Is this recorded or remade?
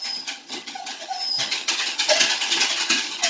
remade